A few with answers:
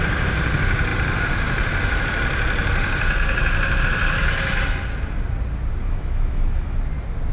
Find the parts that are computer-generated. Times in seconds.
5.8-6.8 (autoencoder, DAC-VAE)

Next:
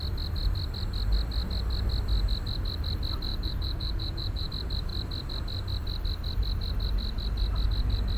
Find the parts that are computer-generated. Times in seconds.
3.3-4.5 (vocoder, Vocos)

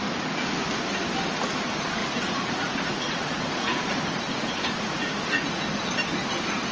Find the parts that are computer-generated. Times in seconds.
2.0-5.6 (vocoder, Vocos)